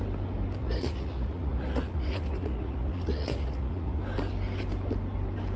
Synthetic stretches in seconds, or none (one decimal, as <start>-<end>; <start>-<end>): 0.6-4.0